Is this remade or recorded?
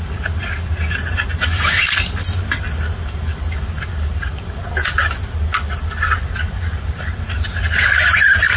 recorded